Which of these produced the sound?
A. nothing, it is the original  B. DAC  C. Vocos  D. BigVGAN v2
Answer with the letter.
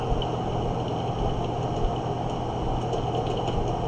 A